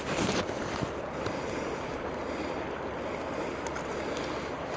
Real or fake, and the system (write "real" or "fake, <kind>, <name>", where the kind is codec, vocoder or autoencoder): real